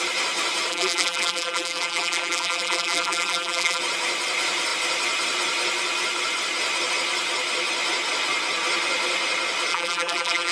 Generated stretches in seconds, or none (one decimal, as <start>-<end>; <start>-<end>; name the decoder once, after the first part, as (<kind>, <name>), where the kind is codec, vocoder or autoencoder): 0.7-3.8 (vocoder, BigVGAN v2); 9.7-10.5